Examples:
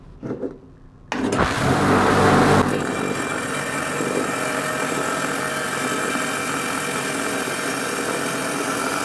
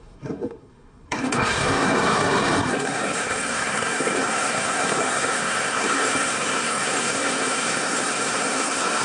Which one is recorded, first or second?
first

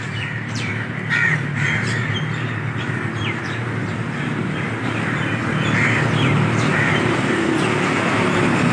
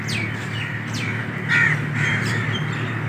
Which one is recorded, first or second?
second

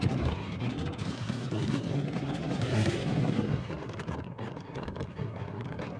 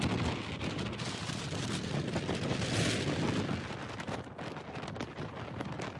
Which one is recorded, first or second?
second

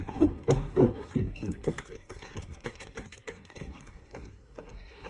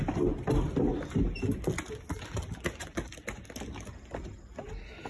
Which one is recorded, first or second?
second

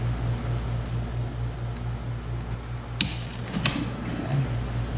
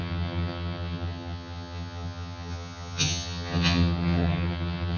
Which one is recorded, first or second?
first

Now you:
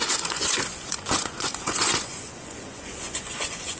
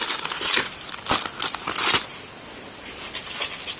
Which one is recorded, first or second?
second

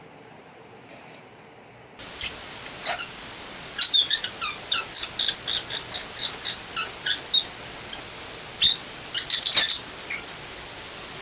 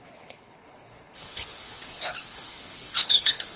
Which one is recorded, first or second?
first